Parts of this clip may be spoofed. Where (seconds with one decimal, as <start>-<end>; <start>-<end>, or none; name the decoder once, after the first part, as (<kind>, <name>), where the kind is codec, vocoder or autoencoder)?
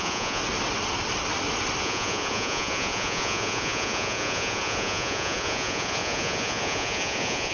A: 0.0-0.4 (vocoder, Vocos); 1.8-7.5